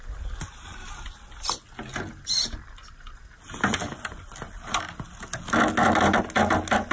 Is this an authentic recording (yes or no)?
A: yes